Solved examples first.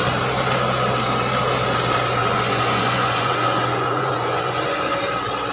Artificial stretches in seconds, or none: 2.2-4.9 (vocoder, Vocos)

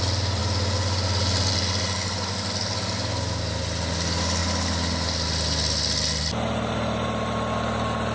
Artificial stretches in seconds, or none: none